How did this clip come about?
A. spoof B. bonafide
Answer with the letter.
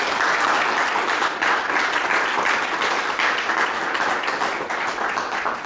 B